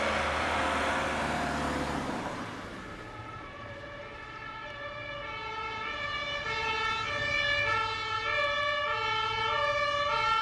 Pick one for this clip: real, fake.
real